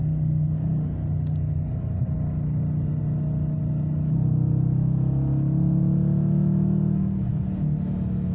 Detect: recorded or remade recorded